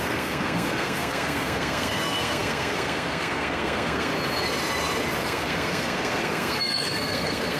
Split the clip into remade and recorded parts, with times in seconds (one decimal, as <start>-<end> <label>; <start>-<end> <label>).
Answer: 0.0-4.1 remade; 4.1-5.2 recorded; 5.2-7.6 remade